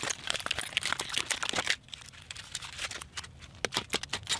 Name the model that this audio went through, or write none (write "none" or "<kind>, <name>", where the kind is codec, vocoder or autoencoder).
none